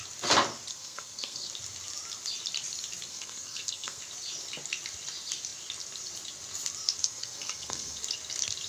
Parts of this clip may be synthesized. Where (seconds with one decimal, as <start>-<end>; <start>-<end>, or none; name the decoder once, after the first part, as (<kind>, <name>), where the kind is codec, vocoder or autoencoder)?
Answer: 0.7-1.5 (codec, SNAC); 3.1-4.0; 7.0-8.0